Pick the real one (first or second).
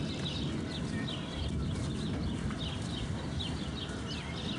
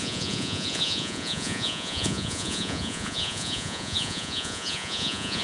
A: first